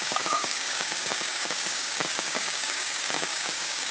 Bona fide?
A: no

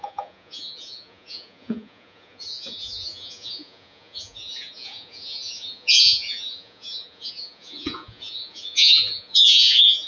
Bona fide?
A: no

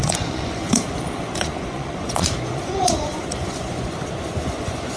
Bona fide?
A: no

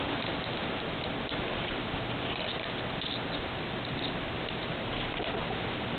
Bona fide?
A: yes